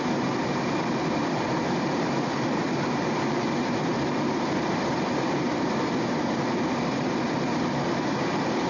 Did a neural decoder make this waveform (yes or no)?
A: yes